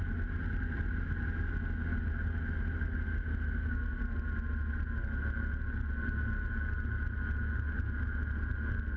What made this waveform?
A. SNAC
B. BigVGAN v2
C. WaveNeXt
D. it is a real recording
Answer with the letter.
D